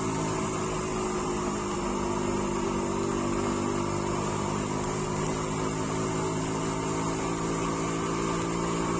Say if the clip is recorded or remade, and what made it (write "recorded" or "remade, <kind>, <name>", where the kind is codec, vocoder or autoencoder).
recorded